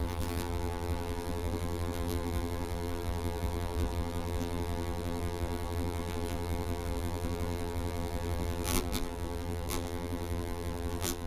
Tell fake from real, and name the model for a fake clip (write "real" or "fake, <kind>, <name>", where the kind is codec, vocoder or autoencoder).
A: fake, vocoder, BigVGAN v2